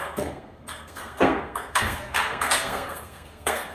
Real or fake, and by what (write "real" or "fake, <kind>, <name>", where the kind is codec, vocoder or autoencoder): fake, codec, SNAC